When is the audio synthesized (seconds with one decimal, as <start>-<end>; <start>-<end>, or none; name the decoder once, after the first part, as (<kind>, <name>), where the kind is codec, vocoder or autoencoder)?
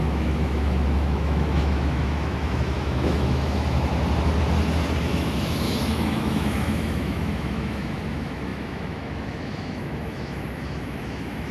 0.0-3.9 (autoencoder, DAC-VAE); 5.0-11.5